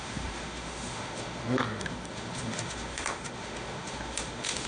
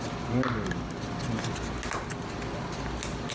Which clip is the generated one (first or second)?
first